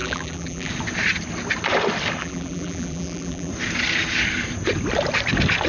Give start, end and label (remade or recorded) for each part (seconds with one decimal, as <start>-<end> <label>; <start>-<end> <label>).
0.0-0.7 remade; 0.7-2.2 recorded; 2.2-3.5 remade; 3.5-5.7 recorded